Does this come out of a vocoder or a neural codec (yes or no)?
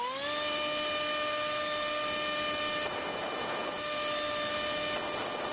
no